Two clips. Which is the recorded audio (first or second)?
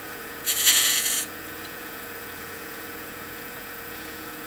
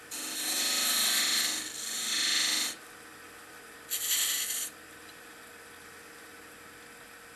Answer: second